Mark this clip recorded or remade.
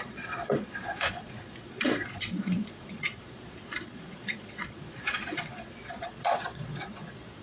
remade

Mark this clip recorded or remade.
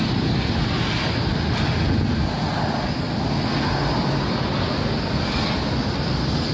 recorded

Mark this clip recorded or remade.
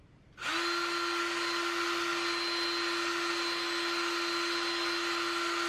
recorded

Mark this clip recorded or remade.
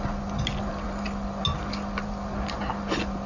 recorded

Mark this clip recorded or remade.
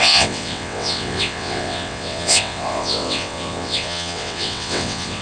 remade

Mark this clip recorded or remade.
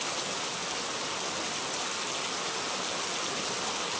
recorded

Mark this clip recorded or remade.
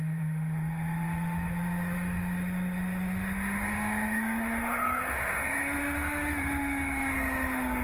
remade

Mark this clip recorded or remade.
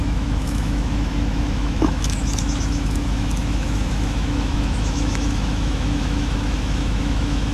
remade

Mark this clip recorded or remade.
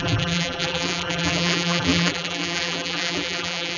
remade